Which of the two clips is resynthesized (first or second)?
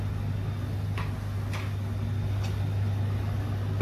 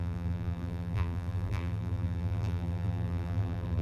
second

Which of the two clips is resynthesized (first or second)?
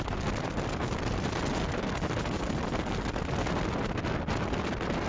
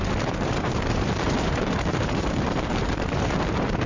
second